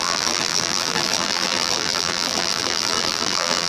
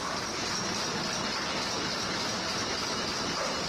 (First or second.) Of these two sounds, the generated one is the first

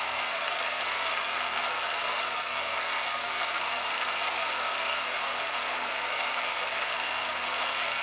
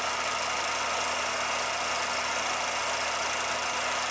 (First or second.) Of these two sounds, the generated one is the first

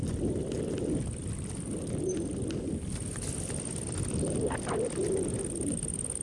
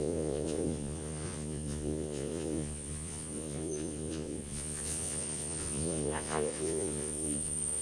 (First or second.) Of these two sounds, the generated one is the second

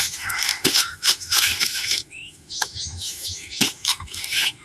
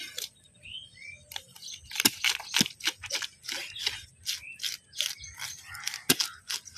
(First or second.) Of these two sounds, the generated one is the first